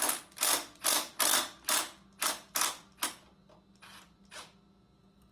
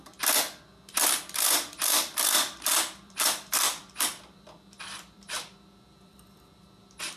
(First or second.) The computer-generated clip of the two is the second